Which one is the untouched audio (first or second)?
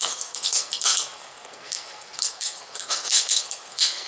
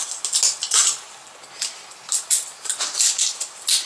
second